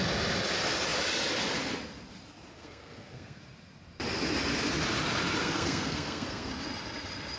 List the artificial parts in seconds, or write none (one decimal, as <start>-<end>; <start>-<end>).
2.5-3.4; 5.4-6.5